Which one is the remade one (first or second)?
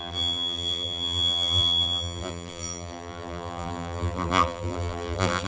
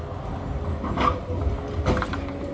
first